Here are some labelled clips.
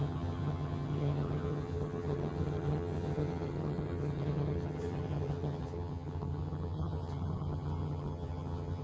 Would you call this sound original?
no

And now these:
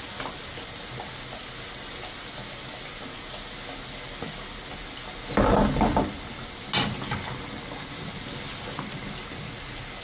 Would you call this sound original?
yes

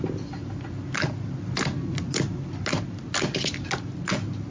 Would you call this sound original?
yes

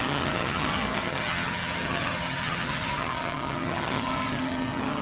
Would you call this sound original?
no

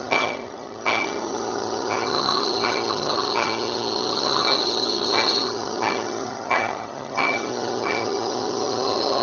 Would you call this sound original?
no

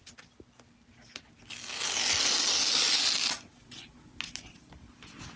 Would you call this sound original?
yes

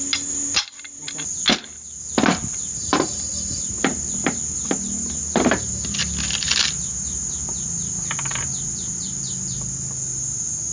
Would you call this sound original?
yes